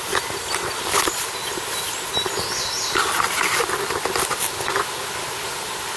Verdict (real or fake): real